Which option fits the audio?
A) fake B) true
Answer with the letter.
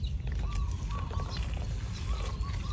B